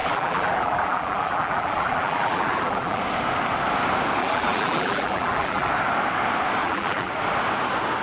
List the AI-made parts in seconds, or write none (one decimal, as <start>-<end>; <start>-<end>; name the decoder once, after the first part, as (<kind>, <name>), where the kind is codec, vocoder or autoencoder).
0.0-3.0 (vocoder, BigVGAN v2); 4.2-5.7; 6.6-7.1